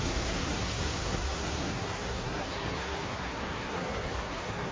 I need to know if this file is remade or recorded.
remade